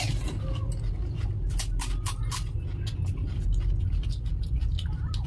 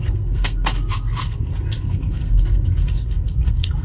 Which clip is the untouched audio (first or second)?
first